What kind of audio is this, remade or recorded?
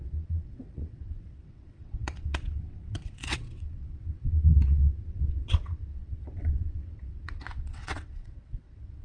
remade